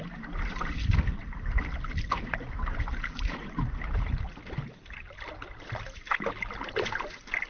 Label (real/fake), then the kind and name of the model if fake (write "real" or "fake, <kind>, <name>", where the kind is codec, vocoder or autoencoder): real